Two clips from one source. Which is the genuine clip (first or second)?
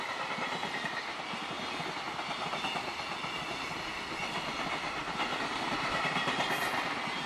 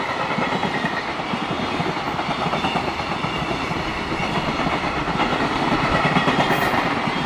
first